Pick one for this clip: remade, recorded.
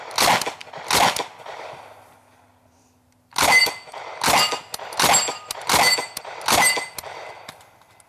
recorded